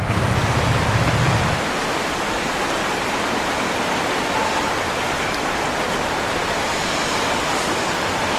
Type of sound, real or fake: real